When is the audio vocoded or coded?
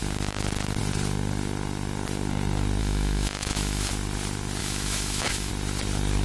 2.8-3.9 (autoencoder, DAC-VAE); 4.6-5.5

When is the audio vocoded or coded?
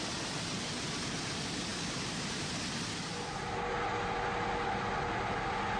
none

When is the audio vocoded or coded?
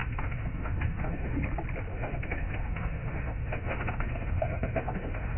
0.0-1.4 (autoencoder, DAC-VAE); 1.9-5.4